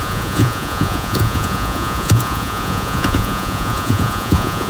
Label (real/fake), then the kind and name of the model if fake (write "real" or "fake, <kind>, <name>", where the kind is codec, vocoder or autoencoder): fake, vocoder, Vocos